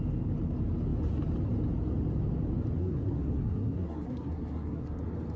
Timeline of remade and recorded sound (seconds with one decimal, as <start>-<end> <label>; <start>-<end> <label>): 0.0-2.8 recorded; 2.8-5.0 remade; 5.0-5.4 recorded